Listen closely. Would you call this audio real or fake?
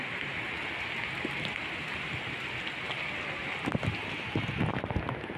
real